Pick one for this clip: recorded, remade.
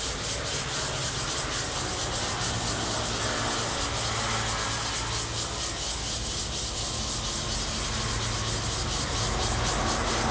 recorded